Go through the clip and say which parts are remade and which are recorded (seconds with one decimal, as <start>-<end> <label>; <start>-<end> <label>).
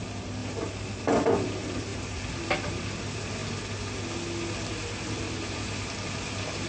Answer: 0.0-0.4 remade; 0.4-1.0 recorded; 1.0-3.4 remade; 3.4-5.5 recorded; 5.5-6.7 remade